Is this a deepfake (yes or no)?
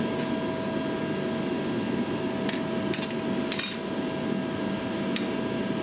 no